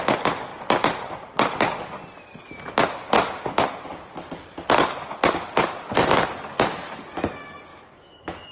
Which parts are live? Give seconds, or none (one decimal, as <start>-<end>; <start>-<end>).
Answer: 0.0-7.7